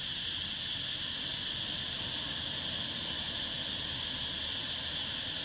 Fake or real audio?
real